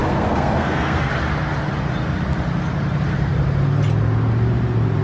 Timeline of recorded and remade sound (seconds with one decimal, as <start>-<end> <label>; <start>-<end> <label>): 0.0-1.1 remade; 1.1-5.0 recorded